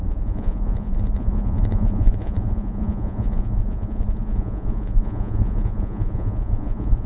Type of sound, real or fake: fake